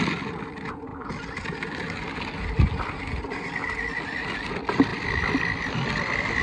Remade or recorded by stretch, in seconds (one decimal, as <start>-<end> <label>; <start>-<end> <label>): 0.0-6.4 recorded